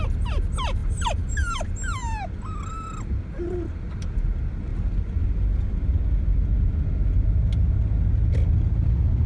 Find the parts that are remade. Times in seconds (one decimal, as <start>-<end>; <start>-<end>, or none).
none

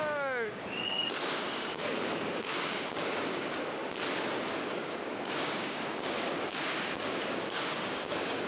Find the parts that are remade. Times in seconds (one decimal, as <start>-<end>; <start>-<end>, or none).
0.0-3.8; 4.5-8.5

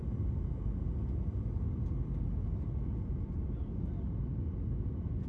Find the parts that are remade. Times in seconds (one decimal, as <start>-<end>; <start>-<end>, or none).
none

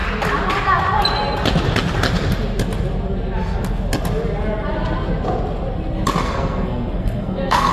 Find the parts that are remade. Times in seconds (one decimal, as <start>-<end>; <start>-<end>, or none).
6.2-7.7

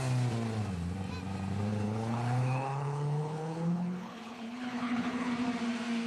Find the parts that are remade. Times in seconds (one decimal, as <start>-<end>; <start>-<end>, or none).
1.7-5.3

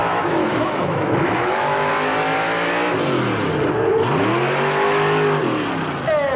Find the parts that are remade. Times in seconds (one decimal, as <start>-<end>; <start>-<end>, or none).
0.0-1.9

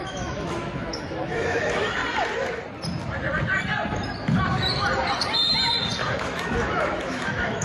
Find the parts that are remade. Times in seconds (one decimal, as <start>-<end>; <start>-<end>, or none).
0.0-2.0; 6.1-7.6